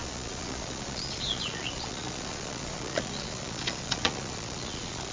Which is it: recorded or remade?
remade